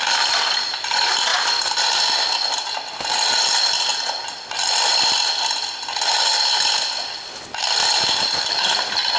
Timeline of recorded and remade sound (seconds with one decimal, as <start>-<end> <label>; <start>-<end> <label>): 0.0-9.2 recorded